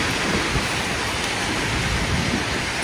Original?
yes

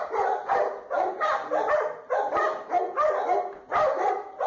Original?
yes